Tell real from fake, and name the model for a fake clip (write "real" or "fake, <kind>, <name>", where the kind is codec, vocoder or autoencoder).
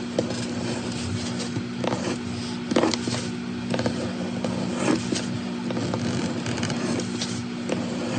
real